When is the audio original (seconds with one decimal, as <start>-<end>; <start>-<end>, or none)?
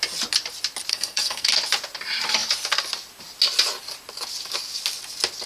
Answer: 0.0-0.9; 1.5-5.5